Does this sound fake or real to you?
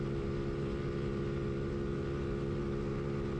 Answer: real